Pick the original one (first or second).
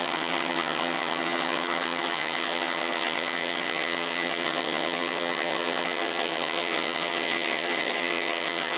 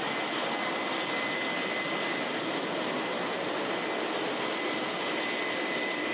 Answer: second